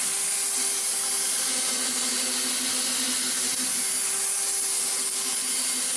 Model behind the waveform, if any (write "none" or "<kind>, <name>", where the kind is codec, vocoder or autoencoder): none